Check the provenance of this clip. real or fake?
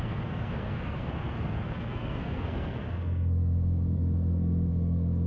fake